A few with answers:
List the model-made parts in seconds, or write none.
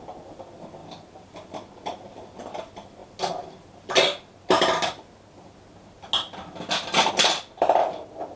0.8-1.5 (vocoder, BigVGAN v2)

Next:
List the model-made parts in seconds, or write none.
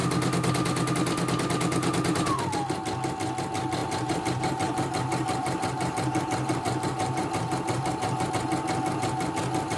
3.8-8.3 (vocoder, BigVGAN v2)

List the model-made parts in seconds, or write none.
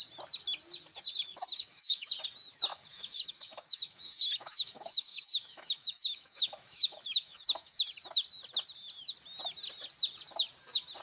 1.3-2.1 (autoencoder, DAC-VAE); 2.7-7.8